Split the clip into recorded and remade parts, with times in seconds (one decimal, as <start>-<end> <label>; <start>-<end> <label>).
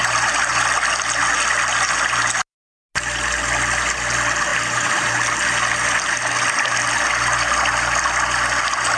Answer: 0.0-4.5 recorded; 4.5-5.1 remade; 5.1-9.0 recorded